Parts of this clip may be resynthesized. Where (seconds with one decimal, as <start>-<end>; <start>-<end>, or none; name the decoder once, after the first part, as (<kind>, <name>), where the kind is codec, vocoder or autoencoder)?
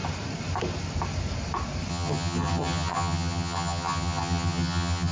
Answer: 1.9-5.1 (vocoder, HiFi-GAN)